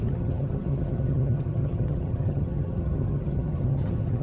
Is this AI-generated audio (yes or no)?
yes